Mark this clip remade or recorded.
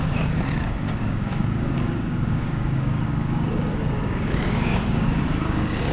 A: remade